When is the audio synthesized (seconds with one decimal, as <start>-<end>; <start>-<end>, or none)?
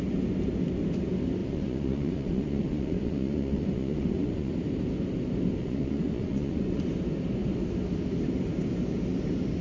1.4-4.5; 5.6-6.8